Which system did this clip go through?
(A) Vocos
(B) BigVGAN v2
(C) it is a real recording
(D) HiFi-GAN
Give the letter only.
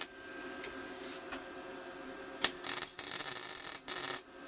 C